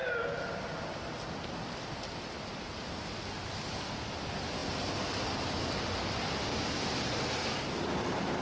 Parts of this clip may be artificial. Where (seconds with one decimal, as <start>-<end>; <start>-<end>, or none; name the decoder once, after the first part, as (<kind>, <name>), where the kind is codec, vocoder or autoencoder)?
none